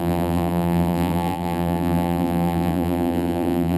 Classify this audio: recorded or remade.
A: remade